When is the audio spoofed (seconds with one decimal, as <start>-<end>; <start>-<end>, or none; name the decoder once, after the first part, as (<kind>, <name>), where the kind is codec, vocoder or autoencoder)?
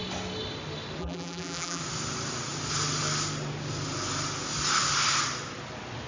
1.0-1.8 (vocoder, BigVGAN v2)